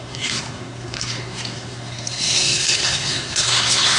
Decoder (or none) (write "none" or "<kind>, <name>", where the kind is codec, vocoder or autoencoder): codec, SNAC